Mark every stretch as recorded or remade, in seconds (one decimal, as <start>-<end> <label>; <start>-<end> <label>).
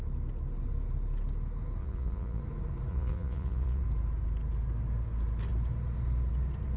0.0-1.8 recorded; 1.8-2.4 remade; 2.4-2.9 recorded; 2.9-3.8 remade; 3.8-6.8 recorded